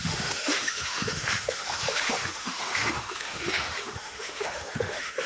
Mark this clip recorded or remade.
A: remade